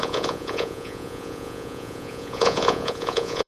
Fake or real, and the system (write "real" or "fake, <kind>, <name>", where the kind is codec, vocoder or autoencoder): fake, vocoder, Vocos